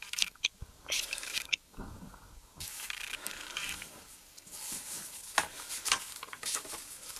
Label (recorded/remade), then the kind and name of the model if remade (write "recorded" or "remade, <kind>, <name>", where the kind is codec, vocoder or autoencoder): remade, codec, DAC